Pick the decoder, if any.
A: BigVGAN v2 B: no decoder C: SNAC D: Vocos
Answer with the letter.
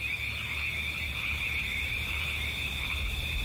A